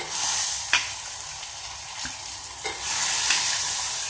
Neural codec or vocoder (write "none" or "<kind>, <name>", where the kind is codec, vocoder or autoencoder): none